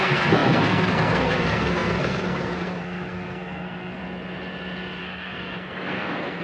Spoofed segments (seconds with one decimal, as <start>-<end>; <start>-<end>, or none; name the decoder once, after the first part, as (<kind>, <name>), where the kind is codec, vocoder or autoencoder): 0.0-4.0 (codec, SNAC); 5.0-6.4